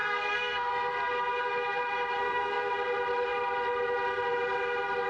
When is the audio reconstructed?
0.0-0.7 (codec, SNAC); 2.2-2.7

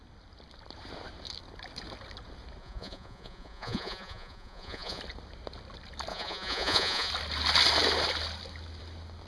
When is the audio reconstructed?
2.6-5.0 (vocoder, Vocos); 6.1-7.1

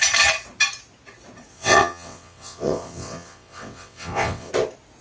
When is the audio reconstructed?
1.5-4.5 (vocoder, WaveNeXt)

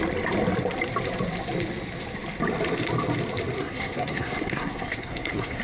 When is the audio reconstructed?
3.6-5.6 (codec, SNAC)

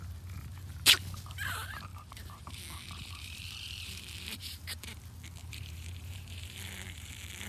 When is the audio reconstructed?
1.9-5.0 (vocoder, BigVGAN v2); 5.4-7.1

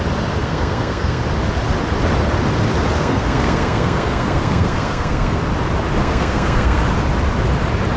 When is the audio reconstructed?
0.4-1.2 (codec, SNAC); 3.0-5.4; 6.0-6.8